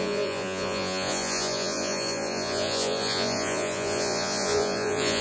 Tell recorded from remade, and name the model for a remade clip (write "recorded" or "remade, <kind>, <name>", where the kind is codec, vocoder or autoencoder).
remade, vocoder, Vocos